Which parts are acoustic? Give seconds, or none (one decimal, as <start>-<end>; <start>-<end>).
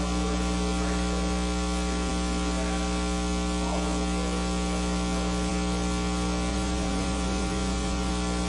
0.0-6.5; 8.1-8.5